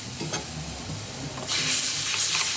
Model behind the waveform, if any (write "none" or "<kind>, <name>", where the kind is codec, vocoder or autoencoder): none